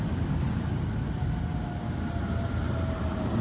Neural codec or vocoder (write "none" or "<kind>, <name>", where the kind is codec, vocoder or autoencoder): none